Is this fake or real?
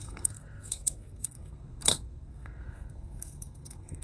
fake